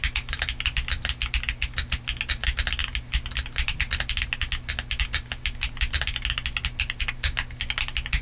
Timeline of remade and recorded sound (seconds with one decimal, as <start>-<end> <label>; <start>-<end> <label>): 0.0-8.2 recorded